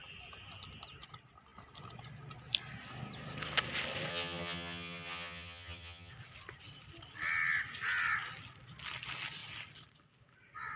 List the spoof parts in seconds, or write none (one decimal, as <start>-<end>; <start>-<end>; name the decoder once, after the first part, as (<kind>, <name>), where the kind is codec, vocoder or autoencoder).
4.1-6.1 (vocoder, HiFi-GAN)

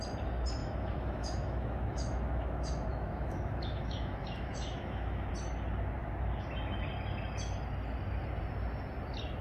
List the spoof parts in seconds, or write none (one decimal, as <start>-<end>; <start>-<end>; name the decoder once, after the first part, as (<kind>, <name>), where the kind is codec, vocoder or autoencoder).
0.6-5.3 (autoencoder, DAC-VAE)

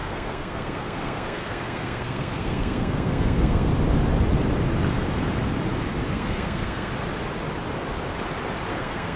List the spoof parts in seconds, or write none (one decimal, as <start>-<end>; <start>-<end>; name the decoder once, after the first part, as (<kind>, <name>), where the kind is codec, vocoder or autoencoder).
0.0-3.7 (codec, SNAC); 6.1-6.9; 8.7-9.2

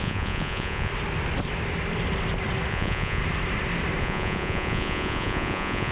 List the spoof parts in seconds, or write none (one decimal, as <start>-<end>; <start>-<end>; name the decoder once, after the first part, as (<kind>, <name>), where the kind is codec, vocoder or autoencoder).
0.0-0.9 (vocoder, Vocos); 2.7-3.2; 4.0-5.9

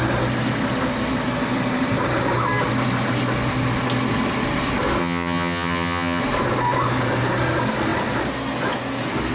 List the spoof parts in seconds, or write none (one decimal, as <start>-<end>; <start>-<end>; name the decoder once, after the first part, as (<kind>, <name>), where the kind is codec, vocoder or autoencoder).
5.0-6.2 (vocoder, HiFi-GAN)

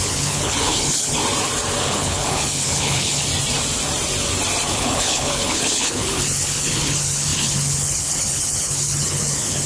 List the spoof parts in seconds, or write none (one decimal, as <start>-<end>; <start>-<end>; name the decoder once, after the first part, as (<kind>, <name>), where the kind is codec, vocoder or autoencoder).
0.0-1.2 (codec, HILCodec); 1.8-3.3; 4.7-9.7